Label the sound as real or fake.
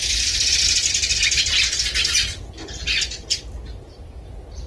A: real